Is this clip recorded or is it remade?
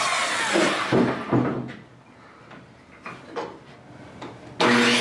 recorded